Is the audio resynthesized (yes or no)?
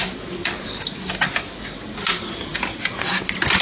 no